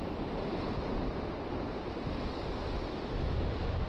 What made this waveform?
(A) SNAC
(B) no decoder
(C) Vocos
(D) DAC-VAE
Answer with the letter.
B